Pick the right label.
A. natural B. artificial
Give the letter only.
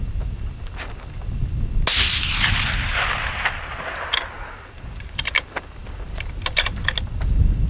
A